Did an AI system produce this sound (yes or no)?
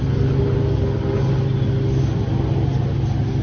no